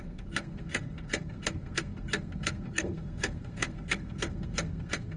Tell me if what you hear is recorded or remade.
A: remade